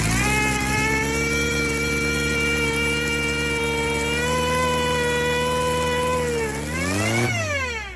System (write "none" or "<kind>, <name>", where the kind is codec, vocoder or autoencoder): none